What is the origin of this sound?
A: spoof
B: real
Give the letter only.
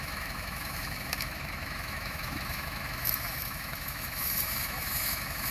A